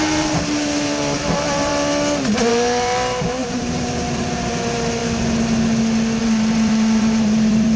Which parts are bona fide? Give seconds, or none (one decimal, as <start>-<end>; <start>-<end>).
1.7-2.5; 5.0-6.2